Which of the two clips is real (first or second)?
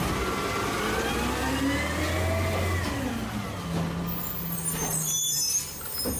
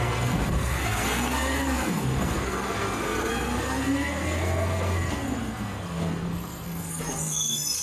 first